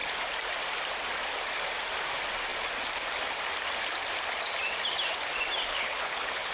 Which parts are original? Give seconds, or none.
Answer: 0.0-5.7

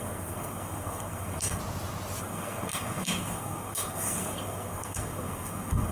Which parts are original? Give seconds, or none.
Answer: 1.6-2.2

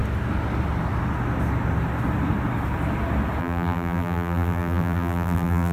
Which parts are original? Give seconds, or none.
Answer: 0.0-3.4

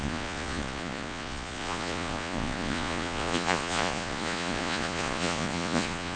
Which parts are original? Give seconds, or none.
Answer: none

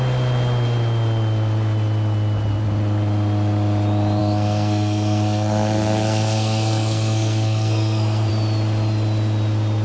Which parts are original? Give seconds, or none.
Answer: 0.0-4.2; 8.3-9.8

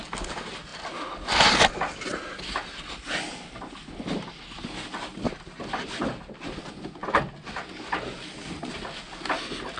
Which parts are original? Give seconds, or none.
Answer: 0.0-9.8